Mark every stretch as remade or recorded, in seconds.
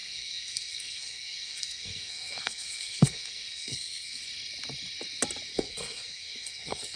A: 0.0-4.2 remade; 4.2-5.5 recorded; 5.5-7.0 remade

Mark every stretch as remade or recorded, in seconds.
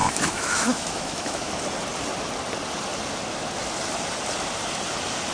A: 0.0-1.5 remade; 1.5-5.3 recorded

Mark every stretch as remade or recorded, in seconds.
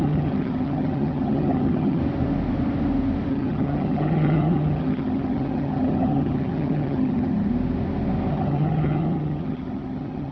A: 0.0-2.0 remade; 2.0-3.3 recorded; 3.3-7.5 remade; 7.5-8.3 recorded; 8.3-10.3 remade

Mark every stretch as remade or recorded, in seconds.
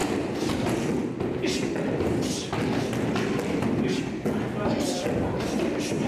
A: 0.0-6.1 recorded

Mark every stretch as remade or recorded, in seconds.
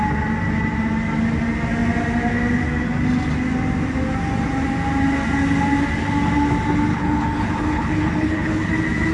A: 0.0-6.9 recorded; 6.9-8.7 remade; 8.7-9.1 recorded